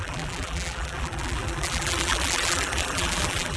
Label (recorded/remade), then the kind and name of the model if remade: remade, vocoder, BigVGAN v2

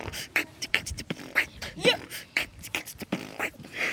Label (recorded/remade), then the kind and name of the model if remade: remade, vocoder, BigVGAN v2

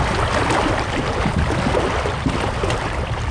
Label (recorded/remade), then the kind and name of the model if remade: recorded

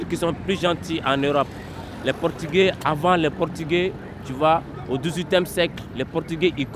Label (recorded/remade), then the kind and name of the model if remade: recorded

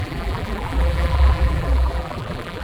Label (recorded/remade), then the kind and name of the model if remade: remade, vocoder, BigVGAN v2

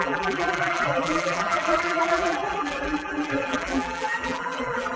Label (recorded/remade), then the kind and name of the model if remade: remade, vocoder, BigVGAN v2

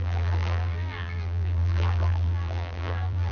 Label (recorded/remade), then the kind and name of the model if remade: remade, vocoder, BigVGAN v2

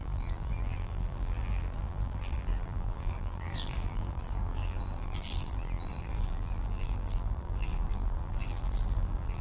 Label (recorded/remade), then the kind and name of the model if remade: remade, vocoder, BigVGAN v2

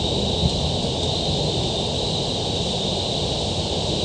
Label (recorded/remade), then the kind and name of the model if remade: recorded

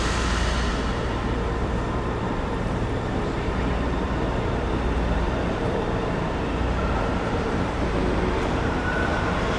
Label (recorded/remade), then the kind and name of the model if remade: remade, vocoder, BigVGAN v2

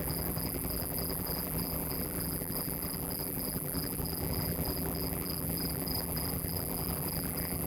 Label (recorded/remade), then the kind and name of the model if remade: remade, vocoder, BigVGAN v2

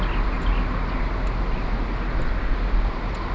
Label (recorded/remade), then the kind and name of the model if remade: recorded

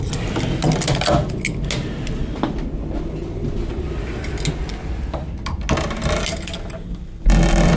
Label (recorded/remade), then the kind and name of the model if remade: recorded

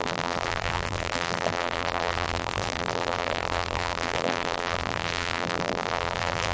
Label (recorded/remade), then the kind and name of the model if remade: remade, vocoder, BigVGAN v2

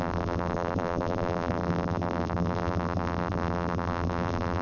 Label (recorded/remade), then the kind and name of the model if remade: remade, vocoder, BigVGAN v2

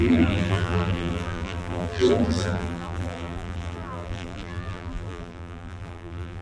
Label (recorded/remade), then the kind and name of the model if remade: remade, vocoder, BigVGAN v2